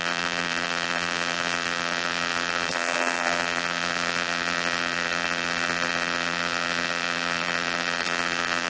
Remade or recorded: remade